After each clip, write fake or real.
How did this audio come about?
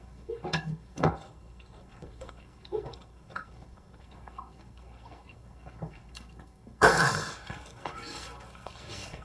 fake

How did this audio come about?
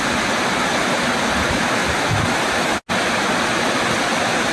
real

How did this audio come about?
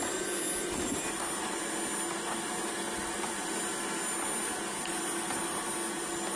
real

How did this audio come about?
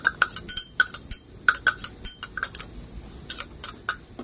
real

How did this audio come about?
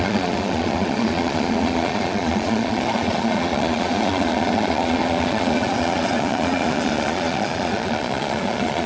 fake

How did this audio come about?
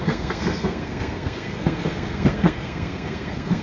fake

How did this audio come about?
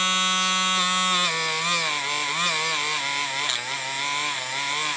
real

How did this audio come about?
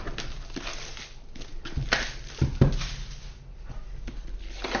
real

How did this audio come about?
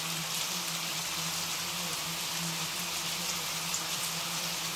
real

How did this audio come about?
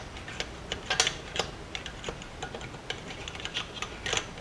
real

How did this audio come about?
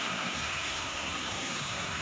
fake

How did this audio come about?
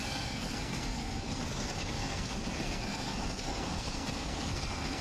fake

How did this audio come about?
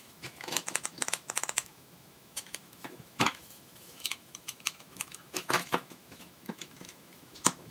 fake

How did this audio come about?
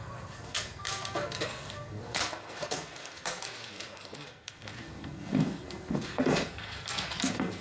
fake